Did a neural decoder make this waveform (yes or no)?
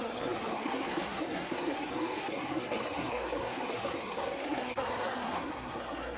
yes